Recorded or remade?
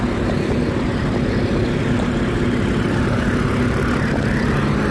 recorded